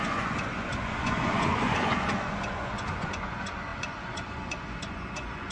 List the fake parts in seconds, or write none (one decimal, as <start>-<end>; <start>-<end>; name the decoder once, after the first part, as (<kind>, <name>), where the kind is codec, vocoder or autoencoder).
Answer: 0.0-5.5 (vocoder, Vocos)

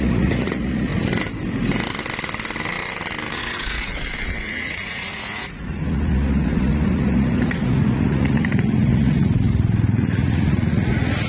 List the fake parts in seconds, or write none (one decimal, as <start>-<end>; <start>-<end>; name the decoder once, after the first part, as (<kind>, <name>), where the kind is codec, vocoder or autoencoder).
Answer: 0.0-0.9 (vocoder, Vocos); 3.3-11.3

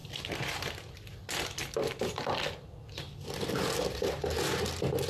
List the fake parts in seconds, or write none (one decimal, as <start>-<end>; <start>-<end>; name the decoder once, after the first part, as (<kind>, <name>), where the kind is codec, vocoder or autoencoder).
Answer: none

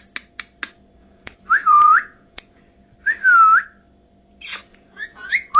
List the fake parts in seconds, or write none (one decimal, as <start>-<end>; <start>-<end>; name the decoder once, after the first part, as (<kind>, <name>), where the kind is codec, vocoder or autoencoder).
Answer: 1.0-2.6 (vocoder, Vocos); 4.7-5.6

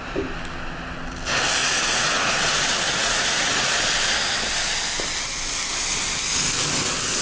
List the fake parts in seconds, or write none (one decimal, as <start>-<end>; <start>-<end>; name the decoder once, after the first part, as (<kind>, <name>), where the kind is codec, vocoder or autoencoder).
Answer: 1.6-2.3 (vocoder, Vocos); 3.0-3.8

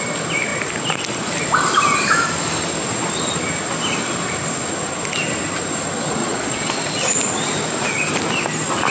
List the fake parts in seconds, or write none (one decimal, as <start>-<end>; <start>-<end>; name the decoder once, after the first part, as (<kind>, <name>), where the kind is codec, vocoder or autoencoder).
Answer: 6.2-6.7 (vocoder, Vocos)

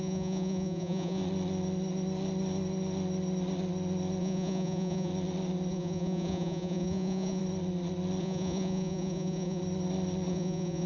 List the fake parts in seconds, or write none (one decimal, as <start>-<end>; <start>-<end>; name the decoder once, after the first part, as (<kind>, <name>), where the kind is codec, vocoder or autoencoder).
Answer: 0.0-1.2 (vocoder, Vocos); 4.2-5.1; 5.7-7.4; 8.2-9.6; 10.3-10.9

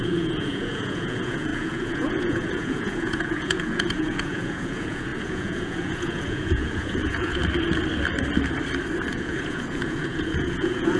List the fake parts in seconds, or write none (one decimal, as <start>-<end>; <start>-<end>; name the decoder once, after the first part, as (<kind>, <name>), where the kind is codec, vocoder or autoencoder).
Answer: 0.0-7.4 (vocoder, Vocos); 9.1-11.0